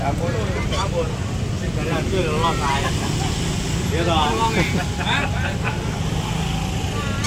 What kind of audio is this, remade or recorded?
recorded